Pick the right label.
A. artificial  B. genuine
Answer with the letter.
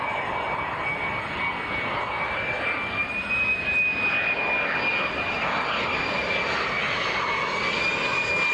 B